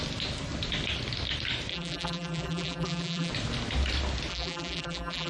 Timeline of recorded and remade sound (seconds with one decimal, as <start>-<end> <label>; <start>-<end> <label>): 0.0-1.7 recorded; 1.7-3.3 remade; 3.3-4.3 recorded; 4.3-5.3 remade